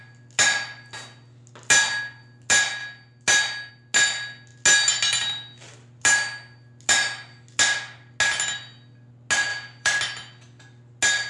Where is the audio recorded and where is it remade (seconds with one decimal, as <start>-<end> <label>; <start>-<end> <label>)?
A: 0.0-9.5 recorded; 9.5-10.0 remade; 10.0-11.3 recorded